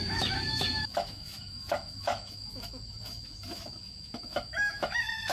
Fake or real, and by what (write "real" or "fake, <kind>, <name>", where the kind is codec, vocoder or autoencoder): fake, autoencoder, DAC-VAE